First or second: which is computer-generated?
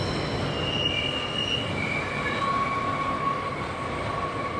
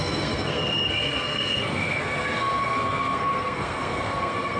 second